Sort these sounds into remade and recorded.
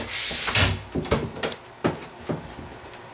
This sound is recorded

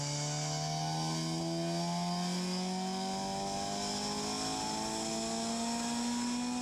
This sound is recorded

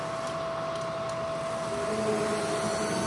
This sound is recorded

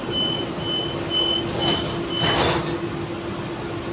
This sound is recorded